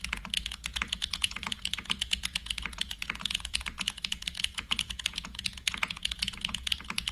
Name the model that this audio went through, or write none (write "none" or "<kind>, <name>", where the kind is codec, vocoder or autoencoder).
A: vocoder, Vocos